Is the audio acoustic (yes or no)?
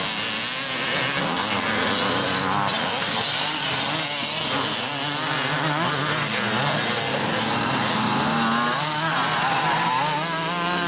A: yes